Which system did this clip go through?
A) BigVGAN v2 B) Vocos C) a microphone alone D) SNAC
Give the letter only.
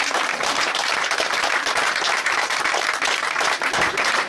A